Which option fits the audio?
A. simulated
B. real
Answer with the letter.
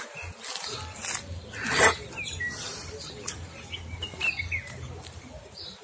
B